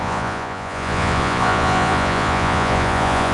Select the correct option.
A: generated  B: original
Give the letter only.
A